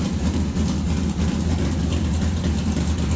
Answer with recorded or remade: recorded